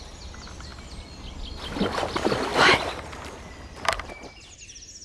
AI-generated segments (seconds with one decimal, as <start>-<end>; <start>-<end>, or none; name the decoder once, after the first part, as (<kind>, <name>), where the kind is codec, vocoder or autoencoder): 2.5-4.0 (vocoder, BigVGAN v2)